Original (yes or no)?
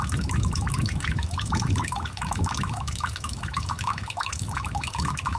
no